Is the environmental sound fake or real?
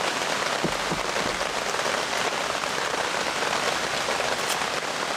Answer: real